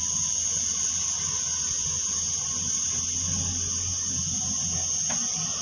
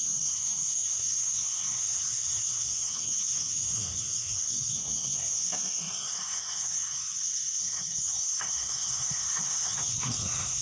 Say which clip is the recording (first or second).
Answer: first